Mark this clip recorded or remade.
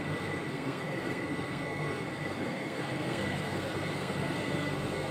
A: remade